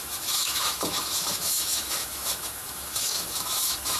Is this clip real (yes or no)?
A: no